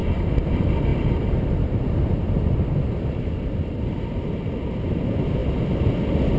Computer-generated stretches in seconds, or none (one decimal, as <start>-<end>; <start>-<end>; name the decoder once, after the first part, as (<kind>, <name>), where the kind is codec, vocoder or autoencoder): none